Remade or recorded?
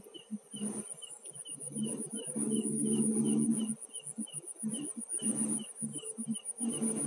recorded